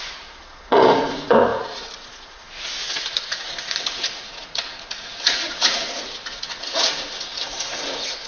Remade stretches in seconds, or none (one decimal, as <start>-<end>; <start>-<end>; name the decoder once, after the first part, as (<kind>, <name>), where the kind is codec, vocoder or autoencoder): 0.0-8.3 (vocoder, Vocos)